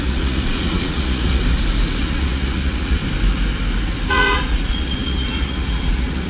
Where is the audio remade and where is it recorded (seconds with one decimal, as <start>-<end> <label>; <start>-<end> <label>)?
0.0-1.4 remade; 1.4-2.0 recorded; 2.0-3.0 remade; 3.0-4.1 recorded; 4.1-6.3 remade